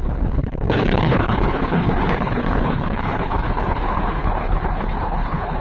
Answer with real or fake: fake